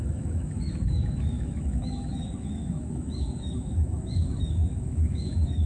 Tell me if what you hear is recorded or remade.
remade